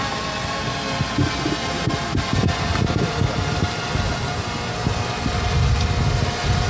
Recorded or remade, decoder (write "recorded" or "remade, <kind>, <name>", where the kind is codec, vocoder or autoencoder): recorded